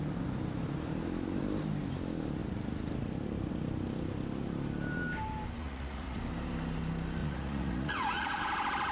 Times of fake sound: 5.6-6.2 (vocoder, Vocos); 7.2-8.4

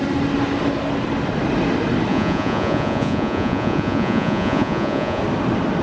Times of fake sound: 2.1-5.2 (vocoder, Vocos)

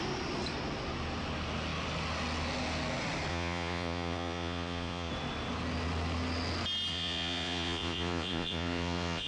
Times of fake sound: 3.3-5.1 (vocoder, Vocos); 6.9-9.3

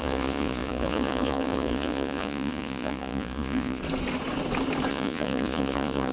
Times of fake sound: 0.0-3.8 (vocoder, Vocos); 4.9-6.1

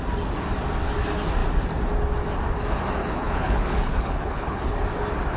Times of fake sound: 3.0-4.8 (codec, HILCodec)

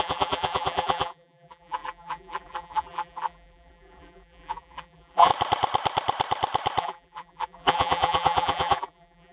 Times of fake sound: 0.0-5.3 (vocoder, BigVGAN v2); 6.8-9.3

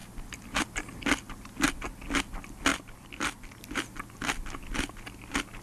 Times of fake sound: 2.7-3.6 (vocoder, BigVGAN v2)

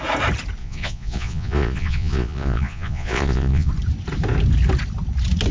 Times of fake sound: 0.6-3.7 (vocoder, Vocos)